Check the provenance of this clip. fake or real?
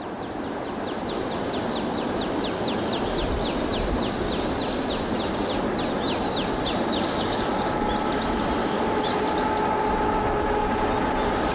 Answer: real